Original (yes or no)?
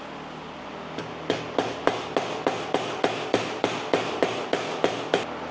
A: yes